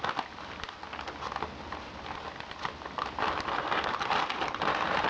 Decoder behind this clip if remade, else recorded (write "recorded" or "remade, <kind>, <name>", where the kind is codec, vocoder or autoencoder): recorded